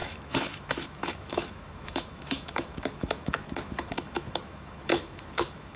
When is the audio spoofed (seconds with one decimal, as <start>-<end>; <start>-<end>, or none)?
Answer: 0.0-5.8